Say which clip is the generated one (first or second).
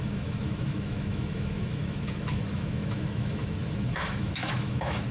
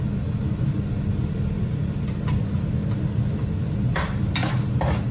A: first